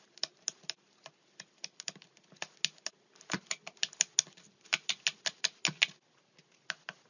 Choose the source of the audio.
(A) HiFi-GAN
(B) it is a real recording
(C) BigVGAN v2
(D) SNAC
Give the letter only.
B